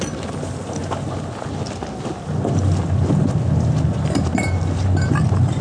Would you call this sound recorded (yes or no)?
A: yes